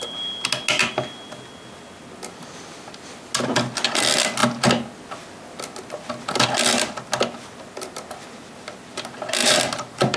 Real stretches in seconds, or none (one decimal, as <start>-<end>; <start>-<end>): 0.0-9.4